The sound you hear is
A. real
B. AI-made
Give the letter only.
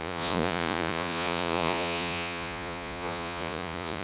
B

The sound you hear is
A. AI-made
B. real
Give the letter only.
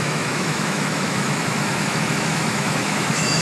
A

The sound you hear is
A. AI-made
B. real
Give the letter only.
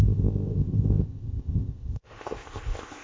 A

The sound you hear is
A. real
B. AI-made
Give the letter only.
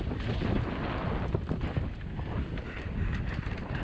A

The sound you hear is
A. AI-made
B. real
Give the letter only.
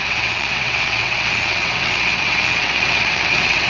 A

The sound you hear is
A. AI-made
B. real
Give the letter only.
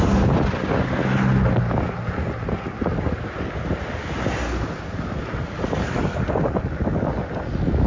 B